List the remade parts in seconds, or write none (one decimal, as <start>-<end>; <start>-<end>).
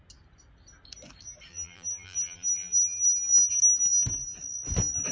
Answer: 1.5-3.2